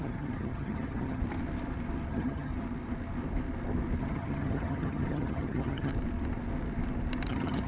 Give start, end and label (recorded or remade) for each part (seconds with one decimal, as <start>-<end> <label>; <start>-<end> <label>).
0.0-1.2 remade; 1.2-2.1 recorded; 2.1-2.5 remade; 2.5-4.0 recorded; 4.0-5.9 remade; 5.9-7.3 recorded; 7.3-7.7 remade